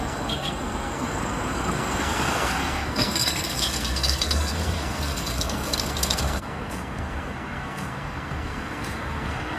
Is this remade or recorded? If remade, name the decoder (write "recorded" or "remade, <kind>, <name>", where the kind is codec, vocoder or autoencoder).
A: remade, codec, SNAC